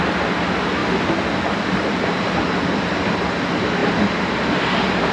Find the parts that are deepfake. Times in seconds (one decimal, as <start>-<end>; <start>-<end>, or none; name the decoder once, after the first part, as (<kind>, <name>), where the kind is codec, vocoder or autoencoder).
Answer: none

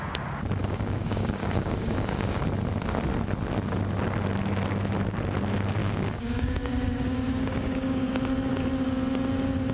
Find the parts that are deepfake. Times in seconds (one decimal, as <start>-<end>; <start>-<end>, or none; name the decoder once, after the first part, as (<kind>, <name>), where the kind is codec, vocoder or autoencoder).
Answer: 0.6-2.4 (codec, DAC); 5.8-8.1

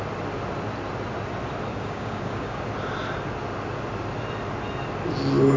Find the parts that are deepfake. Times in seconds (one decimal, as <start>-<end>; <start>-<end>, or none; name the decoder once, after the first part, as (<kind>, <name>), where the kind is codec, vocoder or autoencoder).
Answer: 1.7-2.6 (codec, DAC)